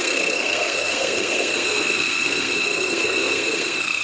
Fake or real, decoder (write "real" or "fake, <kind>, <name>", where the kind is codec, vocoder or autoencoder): fake, codec, SNAC